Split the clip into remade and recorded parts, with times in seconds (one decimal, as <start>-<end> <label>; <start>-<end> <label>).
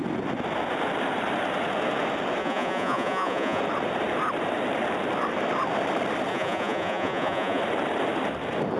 0.0-2.4 recorded; 2.4-3.6 remade; 3.6-6.3 recorded; 6.3-7.6 remade; 7.6-8.8 recorded